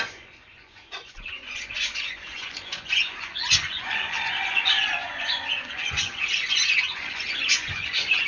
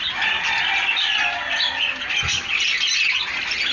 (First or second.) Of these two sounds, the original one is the second